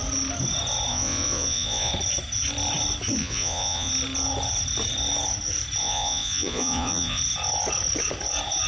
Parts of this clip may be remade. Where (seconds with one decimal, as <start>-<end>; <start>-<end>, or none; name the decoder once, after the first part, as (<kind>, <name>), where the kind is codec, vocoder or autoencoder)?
0.9-1.9 (vocoder, Vocos); 3.2-3.9; 5.8-7.2